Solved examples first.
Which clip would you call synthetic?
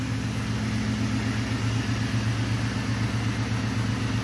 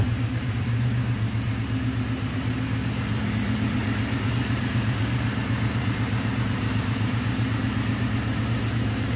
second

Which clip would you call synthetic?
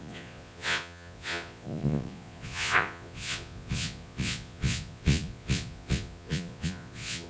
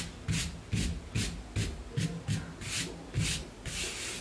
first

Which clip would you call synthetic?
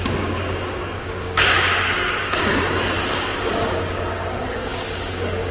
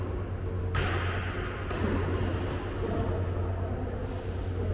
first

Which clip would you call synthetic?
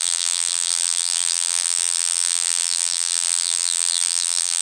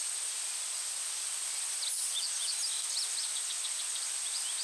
first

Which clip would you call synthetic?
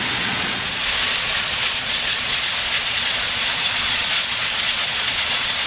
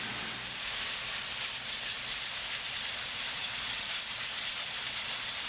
first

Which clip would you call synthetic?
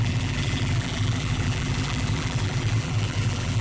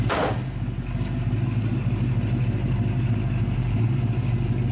first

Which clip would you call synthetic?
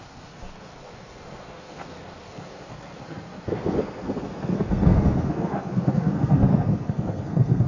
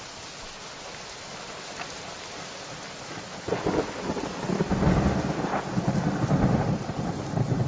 first